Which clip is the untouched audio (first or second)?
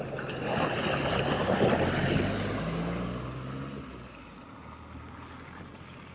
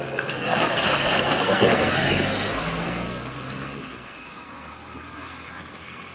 first